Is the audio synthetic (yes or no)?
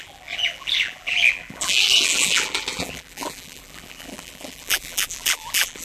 yes